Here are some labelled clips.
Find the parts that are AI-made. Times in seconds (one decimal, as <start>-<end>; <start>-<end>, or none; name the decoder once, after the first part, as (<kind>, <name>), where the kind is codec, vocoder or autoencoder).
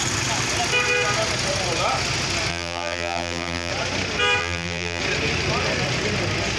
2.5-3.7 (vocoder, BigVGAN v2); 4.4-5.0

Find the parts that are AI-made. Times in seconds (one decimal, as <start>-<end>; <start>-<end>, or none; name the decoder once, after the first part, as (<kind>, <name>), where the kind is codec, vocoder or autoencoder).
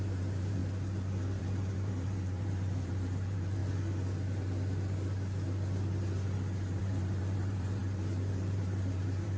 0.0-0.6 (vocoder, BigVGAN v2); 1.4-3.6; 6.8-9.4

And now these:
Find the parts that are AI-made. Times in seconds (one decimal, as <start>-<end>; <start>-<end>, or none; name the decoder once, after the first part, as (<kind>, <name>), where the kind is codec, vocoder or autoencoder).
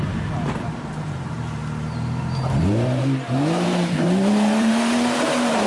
0.0-1.6 (vocoder, BigVGAN v2); 2.4-5.7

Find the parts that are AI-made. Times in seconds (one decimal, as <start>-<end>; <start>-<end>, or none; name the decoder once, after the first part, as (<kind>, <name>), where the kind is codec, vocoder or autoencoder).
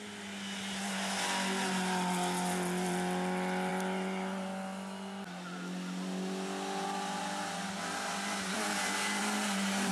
9.2-9.9 (vocoder, BigVGAN v2)